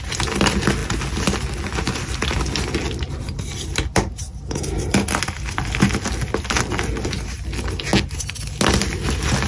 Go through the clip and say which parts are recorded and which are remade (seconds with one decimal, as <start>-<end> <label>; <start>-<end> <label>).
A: 0.0-9.5 recorded